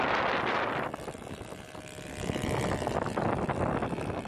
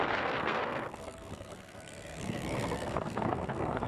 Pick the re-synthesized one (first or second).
second